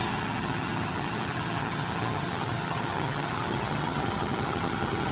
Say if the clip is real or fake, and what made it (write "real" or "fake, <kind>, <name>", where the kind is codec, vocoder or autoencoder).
fake, vocoder, HiFi-GAN